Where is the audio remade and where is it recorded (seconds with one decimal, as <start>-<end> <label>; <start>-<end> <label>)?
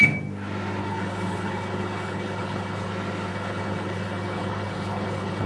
0.0-0.8 recorded; 0.8-2.9 remade; 2.9-3.3 recorded; 3.3-5.5 remade